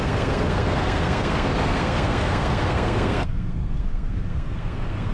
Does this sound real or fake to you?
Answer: fake